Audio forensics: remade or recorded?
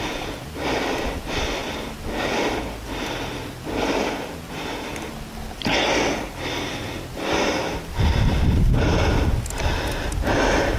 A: recorded